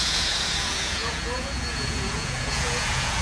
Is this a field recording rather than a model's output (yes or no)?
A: no